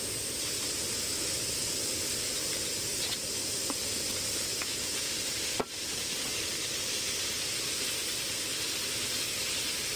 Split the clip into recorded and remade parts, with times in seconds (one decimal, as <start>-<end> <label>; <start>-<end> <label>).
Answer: 0.0-4.5 recorded; 4.5-5.1 remade; 5.1-10.0 recorded